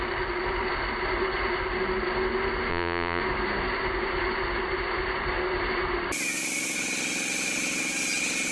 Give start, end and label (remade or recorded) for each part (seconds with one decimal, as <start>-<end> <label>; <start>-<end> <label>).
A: 0.0-2.7 recorded; 2.7-3.2 remade; 3.2-8.5 recorded